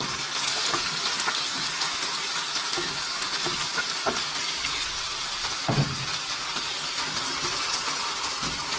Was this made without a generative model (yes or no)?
yes